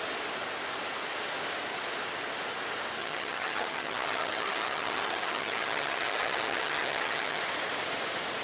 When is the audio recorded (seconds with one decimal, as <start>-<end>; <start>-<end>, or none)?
0.0-3.0; 7.4-8.4